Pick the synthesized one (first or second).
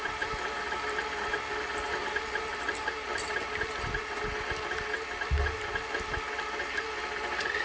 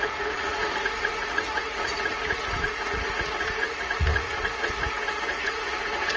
second